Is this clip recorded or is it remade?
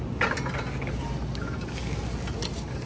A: recorded